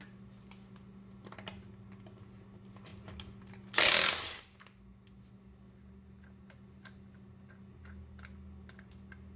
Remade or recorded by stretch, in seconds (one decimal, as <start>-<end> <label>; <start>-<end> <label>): 0.0-9.4 recorded